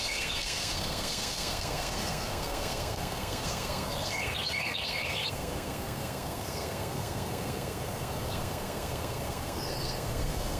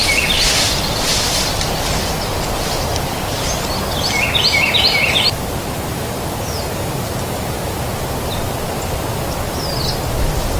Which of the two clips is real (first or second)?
second